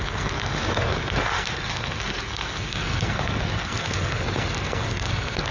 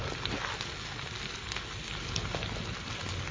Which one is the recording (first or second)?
second